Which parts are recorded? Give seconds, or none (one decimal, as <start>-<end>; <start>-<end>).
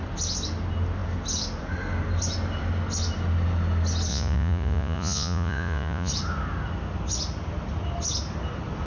0.0-4.1; 6.1-8.9